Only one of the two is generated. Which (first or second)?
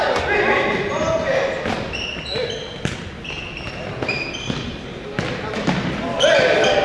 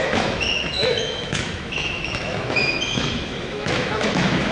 second